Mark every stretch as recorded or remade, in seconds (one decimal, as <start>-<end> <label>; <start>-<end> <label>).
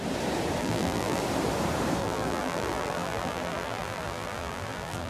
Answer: 0.0-0.6 recorded; 0.6-1.2 remade; 1.2-2.0 recorded; 2.0-5.1 remade